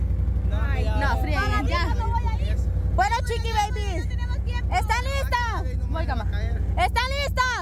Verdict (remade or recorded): recorded